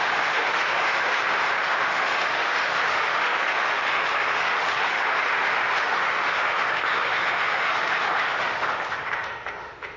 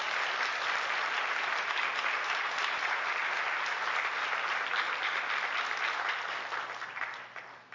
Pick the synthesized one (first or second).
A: first